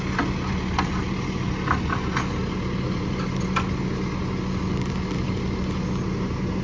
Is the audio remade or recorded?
recorded